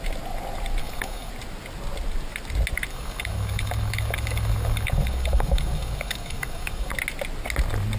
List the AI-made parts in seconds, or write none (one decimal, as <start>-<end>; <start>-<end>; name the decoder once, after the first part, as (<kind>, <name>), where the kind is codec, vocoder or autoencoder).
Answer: 0.8-1.3 (codec, DAC); 2.9-6.9